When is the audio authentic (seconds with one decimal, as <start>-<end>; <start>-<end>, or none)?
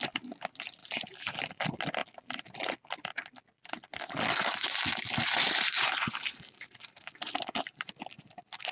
0.0-0.8; 1.5-5.4; 7.9-8.7